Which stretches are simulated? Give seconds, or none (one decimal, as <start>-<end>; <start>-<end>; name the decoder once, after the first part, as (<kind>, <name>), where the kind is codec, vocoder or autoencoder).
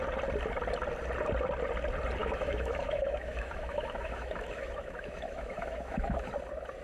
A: 2.2-6.3 (autoencoder, DAC-VAE)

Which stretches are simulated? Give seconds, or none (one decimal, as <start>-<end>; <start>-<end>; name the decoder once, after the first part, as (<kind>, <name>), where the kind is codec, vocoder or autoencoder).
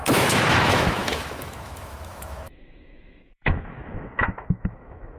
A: 0.0-5.2 (autoencoder, DAC-VAE)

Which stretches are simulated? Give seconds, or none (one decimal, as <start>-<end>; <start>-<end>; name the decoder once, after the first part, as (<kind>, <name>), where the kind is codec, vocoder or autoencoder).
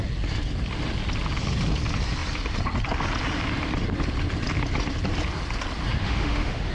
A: 6.0-6.7 (autoencoder, DAC-VAE)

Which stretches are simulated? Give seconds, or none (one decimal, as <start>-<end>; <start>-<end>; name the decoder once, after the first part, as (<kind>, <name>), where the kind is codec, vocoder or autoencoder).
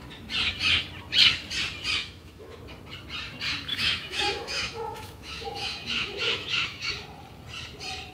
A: 2.0-2.6 (autoencoder, DAC-VAE); 3.7-6.9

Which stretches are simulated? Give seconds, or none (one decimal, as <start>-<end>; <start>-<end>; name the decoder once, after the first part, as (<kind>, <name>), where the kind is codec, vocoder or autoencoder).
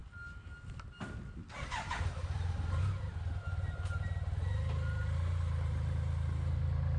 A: none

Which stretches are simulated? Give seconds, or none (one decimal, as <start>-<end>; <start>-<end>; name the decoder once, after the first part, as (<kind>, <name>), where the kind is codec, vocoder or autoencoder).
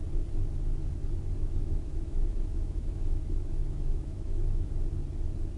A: 1.4-4.7 (autoencoder, DAC-VAE)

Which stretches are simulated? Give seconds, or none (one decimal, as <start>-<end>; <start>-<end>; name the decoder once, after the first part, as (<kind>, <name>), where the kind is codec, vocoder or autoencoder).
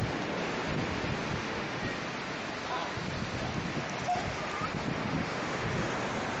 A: 1.2-1.8 (autoencoder, DAC-VAE); 5.0-5.9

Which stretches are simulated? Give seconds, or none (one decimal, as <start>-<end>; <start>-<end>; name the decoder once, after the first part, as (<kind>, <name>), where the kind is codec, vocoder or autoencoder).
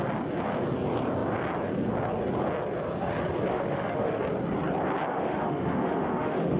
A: 3.5-4.2 (autoencoder, DAC-VAE); 5.1-6.6